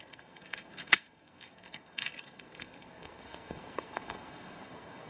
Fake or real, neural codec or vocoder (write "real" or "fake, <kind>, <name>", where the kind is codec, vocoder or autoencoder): fake, codec, SNAC